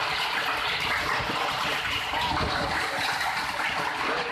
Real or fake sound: real